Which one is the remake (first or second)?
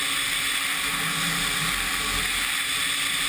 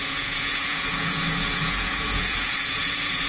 second